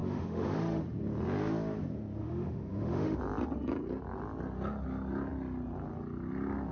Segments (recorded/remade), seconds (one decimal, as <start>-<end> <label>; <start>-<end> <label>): 0.0-0.8 remade; 0.8-2.2 recorded; 2.2-3.2 remade; 3.2-6.7 recorded